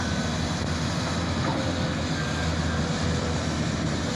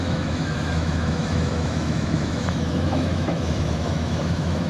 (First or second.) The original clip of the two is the first